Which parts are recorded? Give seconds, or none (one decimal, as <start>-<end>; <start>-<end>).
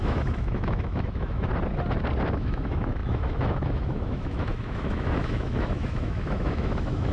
1.5-2.3